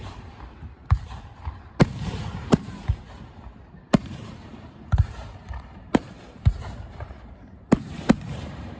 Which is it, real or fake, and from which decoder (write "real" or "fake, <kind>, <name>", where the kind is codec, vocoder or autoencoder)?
fake, vocoder, BigVGAN v2